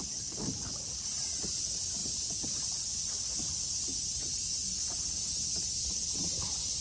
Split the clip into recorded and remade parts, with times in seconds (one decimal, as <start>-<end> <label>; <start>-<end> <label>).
0.0-6.8 recorded